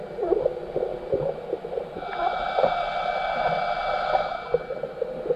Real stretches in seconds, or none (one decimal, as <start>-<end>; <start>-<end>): 0.0-5.4